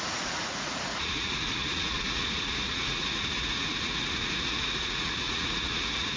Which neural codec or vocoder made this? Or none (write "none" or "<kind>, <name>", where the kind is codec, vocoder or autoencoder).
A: vocoder, Vocos